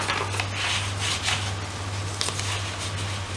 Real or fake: real